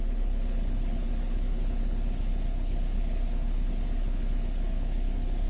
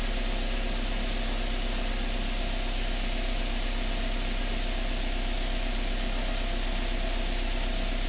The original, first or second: second